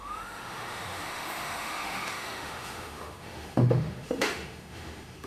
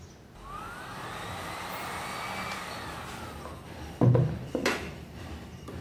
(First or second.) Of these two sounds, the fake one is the first